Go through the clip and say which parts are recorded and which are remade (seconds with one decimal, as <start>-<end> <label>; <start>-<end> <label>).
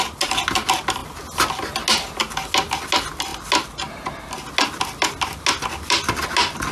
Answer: 0.0-6.7 recorded